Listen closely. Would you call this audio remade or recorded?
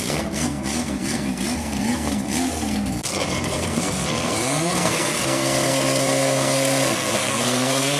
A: remade